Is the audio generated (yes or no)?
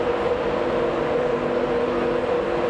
no